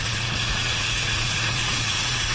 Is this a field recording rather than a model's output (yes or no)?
no